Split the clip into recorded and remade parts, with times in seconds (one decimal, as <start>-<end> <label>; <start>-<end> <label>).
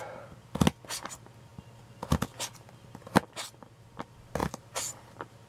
0.0-4.4 recorded; 4.4-5.5 remade